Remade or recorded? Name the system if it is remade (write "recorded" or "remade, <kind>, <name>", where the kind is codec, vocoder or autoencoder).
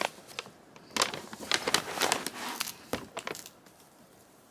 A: recorded